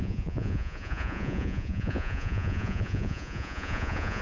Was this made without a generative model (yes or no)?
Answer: no